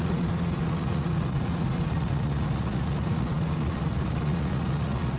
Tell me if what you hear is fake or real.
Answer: fake